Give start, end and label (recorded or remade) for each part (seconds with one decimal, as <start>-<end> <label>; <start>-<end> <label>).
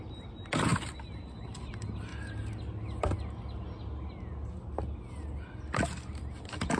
0.0-6.8 recorded